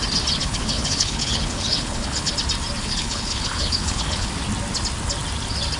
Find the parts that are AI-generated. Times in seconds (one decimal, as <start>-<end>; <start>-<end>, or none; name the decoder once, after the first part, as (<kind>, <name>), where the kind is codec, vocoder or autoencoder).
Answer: 0.4-2.3 (codec, HILCodec); 2.8-4.3